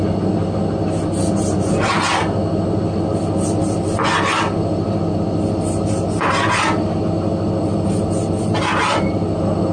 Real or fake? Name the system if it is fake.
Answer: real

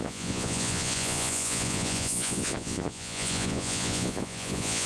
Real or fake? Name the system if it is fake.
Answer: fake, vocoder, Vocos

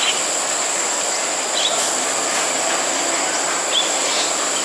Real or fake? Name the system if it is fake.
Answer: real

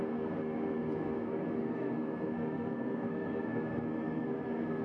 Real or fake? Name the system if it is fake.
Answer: fake, codec, SNAC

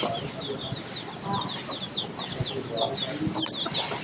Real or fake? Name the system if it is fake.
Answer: real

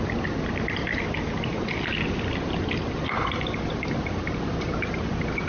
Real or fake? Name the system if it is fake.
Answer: real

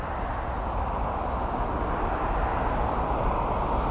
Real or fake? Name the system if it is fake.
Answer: real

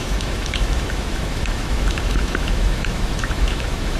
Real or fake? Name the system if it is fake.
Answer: fake, autoencoder, DAC-VAE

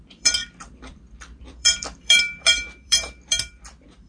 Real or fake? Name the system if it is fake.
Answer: fake, vocoder, BigVGAN v2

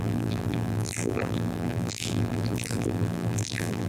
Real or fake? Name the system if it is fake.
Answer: fake, vocoder, BigVGAN v2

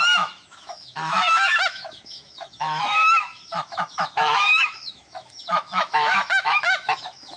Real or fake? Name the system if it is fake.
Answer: fake, autoencoder, DAC-VAE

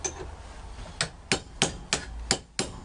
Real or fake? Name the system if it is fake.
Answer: real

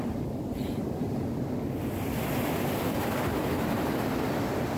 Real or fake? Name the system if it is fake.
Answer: real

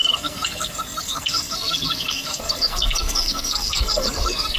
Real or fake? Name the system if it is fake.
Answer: fake, codec, SNAC